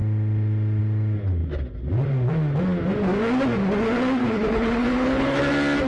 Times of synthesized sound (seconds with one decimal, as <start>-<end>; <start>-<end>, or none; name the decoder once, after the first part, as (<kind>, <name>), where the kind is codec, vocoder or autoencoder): 4.2-5.4 (codec, HILCodec)